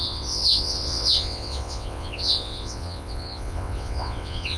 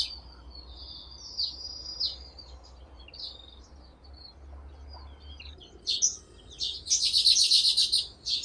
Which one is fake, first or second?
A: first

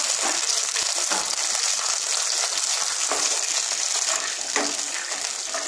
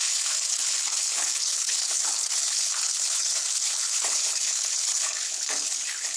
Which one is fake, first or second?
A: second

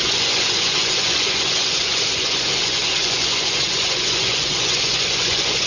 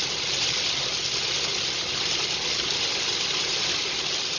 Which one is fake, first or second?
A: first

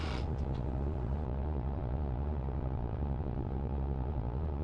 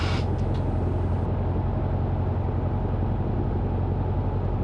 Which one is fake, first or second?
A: first